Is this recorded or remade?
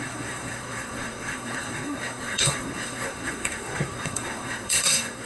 remade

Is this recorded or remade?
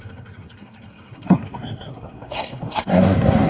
remade